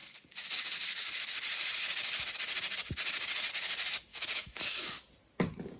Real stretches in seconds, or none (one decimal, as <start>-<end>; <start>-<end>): 0.0-4.1; 5.0-5.8